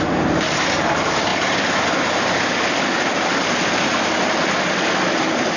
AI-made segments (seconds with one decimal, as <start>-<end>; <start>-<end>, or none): none